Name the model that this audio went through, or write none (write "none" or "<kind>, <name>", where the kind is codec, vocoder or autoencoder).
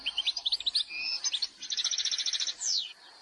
none